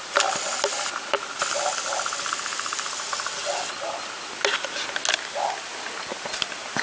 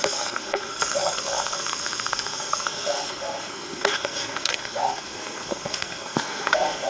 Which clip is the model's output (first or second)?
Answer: second